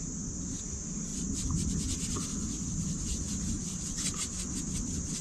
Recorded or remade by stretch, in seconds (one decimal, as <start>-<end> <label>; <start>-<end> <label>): 0.0-5.2 recorded